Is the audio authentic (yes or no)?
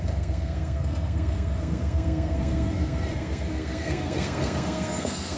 no